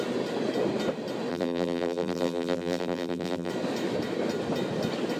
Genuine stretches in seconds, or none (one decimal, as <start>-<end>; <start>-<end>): 0.0-1.3; 3.5-5.2